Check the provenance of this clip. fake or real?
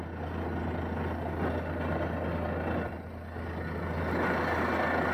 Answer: real